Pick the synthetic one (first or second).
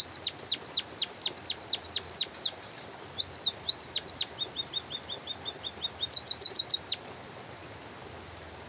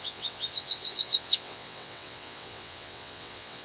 second